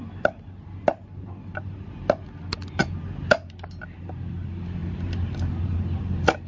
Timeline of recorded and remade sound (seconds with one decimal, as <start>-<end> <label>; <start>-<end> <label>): 0.0-6.5 recorded